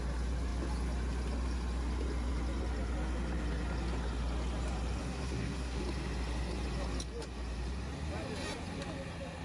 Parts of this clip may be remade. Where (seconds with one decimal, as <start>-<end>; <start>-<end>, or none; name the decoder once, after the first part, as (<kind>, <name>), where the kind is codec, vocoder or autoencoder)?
5.0-5.8 (codec, SNAC)